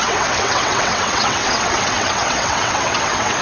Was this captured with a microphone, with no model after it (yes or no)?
no